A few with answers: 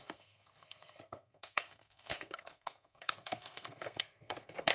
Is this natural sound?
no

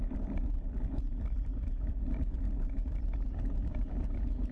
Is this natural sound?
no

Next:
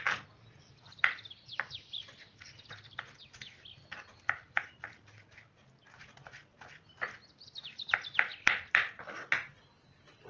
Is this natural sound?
yes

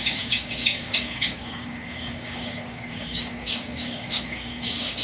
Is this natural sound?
no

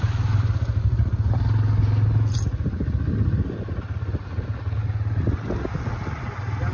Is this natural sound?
yes